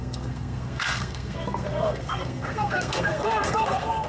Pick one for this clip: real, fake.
fake